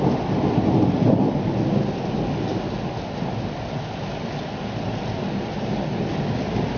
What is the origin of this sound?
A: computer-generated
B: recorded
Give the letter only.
B